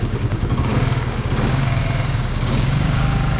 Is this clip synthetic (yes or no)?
yes